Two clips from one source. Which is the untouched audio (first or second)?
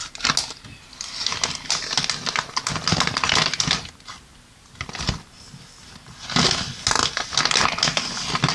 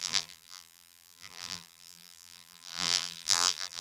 first